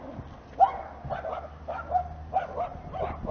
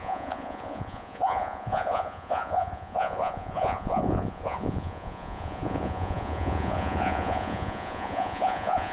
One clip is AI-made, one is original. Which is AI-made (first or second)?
second